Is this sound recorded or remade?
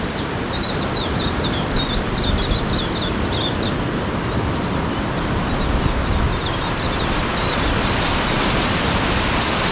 recorded